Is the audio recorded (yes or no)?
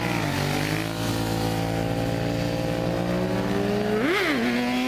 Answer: yes